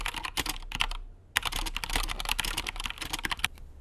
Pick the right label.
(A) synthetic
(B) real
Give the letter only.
B